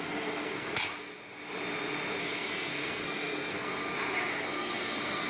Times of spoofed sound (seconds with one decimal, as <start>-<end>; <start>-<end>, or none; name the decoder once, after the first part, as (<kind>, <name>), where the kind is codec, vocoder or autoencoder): 0.0-0.7 (codec, SNAC); 2.2-3.8; 4.3-5.3